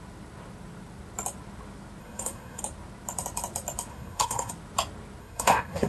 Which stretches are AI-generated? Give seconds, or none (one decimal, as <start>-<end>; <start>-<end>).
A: 2.0-2.6; 3.9-4.5; 5.2-5.9